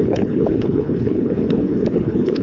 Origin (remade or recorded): remade